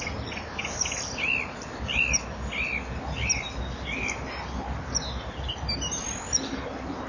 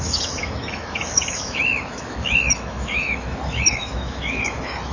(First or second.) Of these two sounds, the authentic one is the first